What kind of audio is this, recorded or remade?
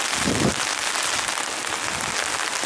recorded